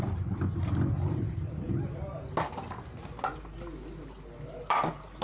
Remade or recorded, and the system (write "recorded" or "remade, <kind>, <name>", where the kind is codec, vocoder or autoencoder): recorded